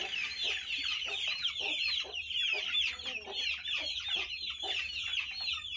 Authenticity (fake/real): fake